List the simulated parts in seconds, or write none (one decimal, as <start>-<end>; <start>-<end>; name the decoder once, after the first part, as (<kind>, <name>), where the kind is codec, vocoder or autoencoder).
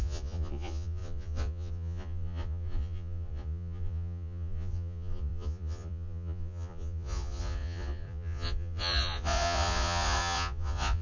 0.0-11.0 (vocoder, Vocos)